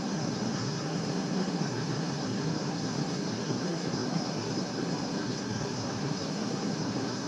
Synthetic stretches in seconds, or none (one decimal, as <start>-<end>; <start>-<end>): 0.0-7.3